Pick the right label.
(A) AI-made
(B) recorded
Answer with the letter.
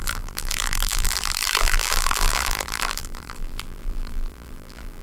A